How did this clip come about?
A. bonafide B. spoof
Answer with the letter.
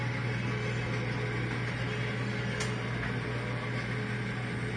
A